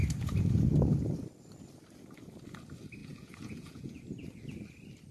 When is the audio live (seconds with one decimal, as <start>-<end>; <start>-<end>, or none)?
0.0-3.0; 4.0-5.1

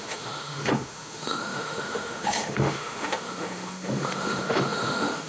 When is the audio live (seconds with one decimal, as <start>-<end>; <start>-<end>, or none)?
none

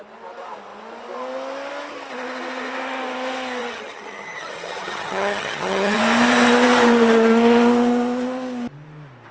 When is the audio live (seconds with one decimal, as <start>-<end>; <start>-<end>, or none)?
0.0-3.6; 6.0-9.3

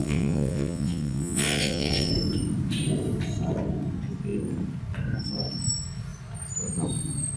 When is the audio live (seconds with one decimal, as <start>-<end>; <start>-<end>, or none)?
2.1-7.4

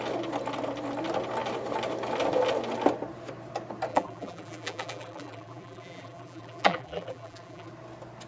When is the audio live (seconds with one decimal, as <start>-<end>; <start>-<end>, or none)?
0.0-3.9; 7.7-8.3

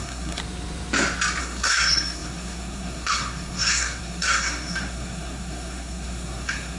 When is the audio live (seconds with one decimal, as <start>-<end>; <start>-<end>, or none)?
0.4-1.4

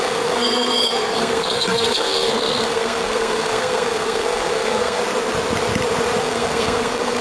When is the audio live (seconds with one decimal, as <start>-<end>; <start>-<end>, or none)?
5.0-6.2

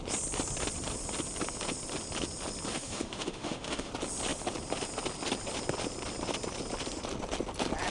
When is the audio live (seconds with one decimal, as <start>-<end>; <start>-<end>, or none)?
0.0-2.7; 3.9-7.9